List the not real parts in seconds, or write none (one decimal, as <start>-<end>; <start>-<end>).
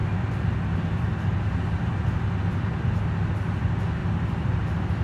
4.0-4.6